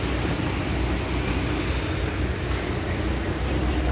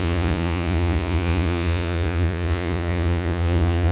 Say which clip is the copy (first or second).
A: second